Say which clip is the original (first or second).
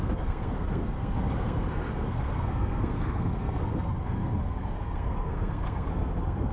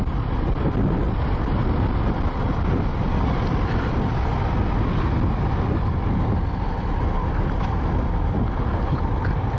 second